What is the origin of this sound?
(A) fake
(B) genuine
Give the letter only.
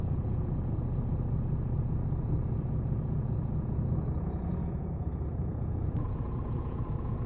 A